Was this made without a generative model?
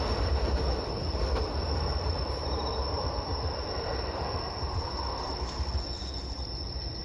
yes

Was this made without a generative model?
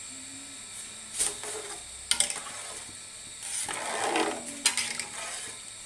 yes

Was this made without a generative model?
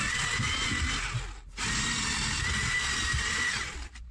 yes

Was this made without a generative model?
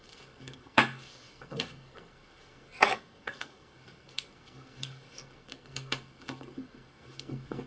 no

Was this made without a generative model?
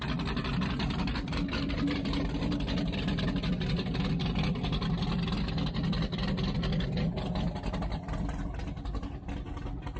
yes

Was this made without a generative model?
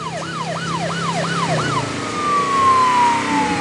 yes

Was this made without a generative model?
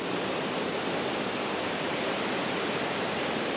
yes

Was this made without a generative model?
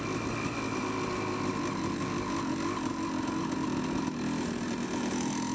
yes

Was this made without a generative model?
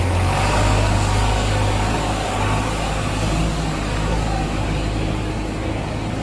no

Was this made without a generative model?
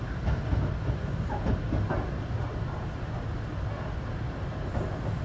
yes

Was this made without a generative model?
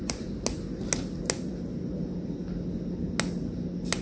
yes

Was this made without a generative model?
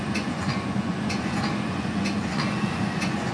no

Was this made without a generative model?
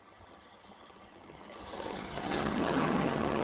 no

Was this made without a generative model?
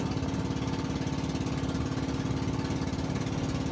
yes